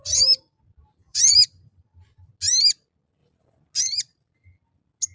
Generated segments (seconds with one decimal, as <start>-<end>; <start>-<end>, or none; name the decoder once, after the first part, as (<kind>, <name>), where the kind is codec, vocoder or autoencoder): 1.0-2.3 (vocoder, BigVGAN v2)